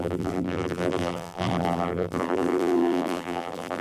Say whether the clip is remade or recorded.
remade